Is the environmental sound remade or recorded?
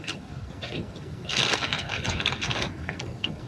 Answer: remade